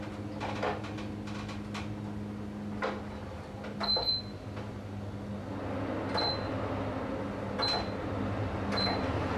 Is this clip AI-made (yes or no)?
no